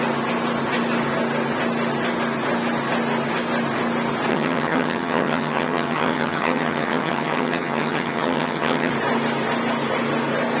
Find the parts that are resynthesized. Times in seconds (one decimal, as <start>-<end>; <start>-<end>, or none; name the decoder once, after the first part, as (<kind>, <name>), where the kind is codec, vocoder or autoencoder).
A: 4.3-8.9 (vocoder, HiFi-GAN)